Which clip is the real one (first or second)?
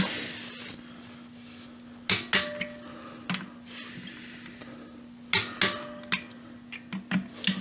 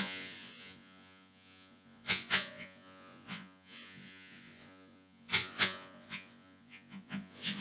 first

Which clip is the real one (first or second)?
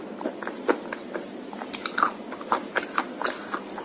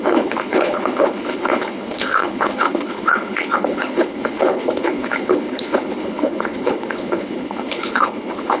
first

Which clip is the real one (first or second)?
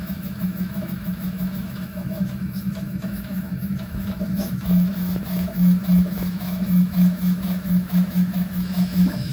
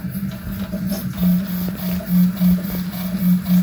second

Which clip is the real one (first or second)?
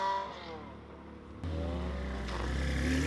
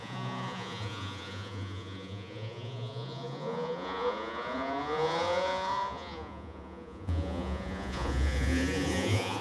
first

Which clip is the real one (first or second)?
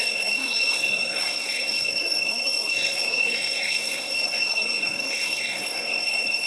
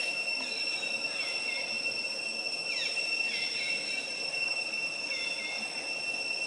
second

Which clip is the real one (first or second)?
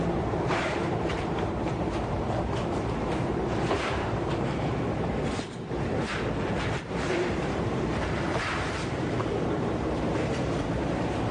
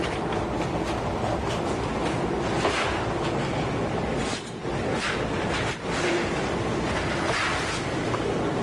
second